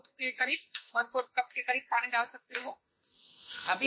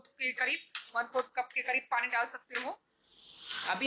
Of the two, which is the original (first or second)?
second